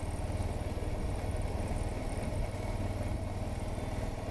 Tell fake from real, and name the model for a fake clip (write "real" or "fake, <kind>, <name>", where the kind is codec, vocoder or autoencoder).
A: real